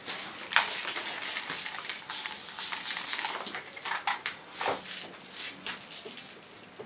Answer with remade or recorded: recorded